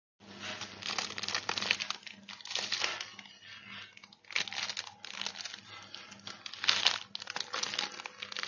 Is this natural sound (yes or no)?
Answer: yes